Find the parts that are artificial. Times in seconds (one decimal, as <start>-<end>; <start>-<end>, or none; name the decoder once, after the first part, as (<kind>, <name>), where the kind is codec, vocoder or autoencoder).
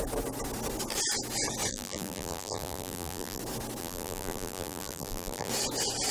1.7-3.4 (vocoder, BigVGAN v2); 3.8-5.5